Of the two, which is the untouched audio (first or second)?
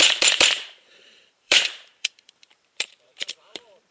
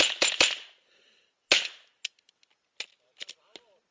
second